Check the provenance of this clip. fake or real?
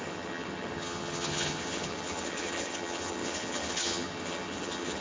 fake